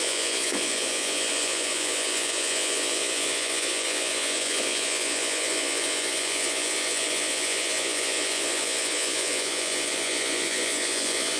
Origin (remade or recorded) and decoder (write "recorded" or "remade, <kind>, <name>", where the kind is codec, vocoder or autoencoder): remade, vocoder, Vocos